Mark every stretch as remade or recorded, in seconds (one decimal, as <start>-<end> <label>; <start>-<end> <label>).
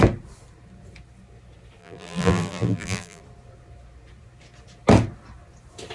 0.0-1.8 recorded; 1.8-3.2 remade; 3.2-5.9 recorded